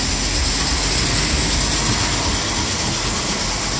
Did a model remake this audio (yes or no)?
no